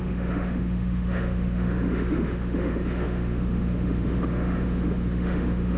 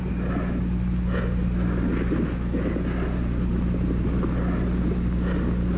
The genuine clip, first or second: second